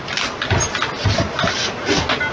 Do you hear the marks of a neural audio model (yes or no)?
no